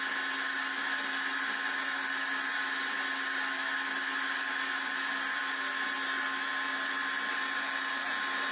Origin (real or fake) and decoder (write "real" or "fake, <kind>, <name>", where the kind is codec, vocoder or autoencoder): real